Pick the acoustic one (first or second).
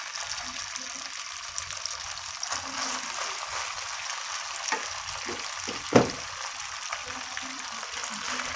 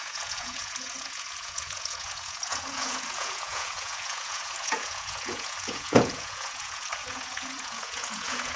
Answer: first